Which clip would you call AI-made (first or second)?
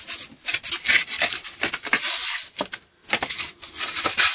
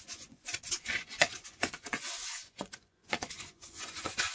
second